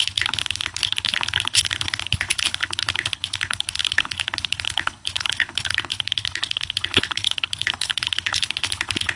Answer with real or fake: fake